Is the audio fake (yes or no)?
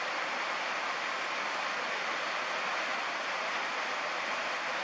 no